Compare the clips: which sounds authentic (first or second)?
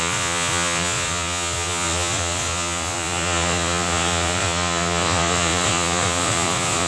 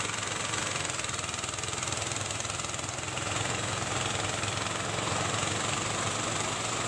second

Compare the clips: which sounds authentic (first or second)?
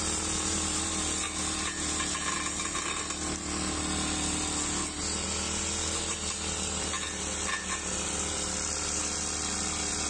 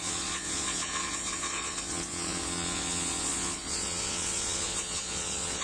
first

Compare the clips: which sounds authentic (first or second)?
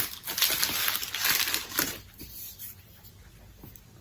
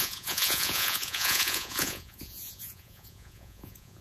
first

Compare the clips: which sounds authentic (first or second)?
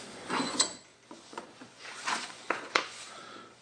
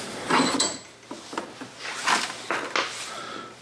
second